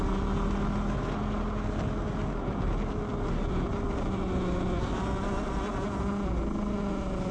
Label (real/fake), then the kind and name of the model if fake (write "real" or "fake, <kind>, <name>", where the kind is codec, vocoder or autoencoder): real